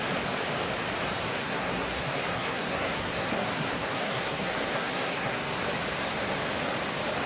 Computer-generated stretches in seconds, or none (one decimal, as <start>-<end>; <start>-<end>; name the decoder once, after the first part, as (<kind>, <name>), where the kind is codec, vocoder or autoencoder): 1.2-5.6 (codec, SNAC)